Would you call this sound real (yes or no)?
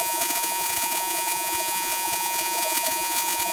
no